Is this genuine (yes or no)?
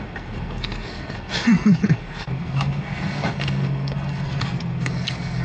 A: no